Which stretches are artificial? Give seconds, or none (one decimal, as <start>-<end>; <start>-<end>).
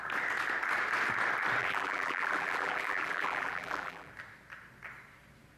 1.6-4.1